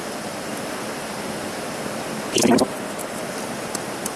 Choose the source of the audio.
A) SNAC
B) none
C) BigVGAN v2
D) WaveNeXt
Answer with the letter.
C